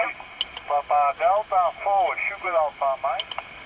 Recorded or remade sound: recorded